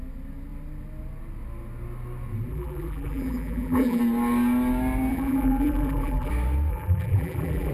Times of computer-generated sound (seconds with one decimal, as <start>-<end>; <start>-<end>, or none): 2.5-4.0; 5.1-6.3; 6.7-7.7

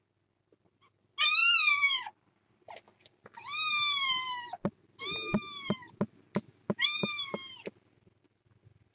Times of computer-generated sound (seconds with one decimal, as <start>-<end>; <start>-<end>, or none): none

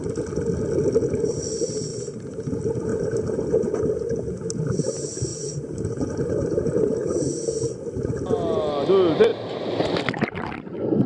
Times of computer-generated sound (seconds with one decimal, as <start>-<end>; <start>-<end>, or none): 1.9-2.5; 2.9-3.7; 5.3-7.2; 9.3-10.0

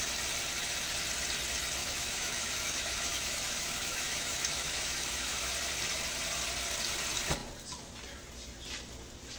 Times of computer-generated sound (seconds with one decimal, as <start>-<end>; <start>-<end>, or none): 1.8-5.5